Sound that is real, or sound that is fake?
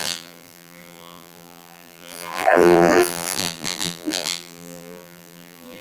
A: fake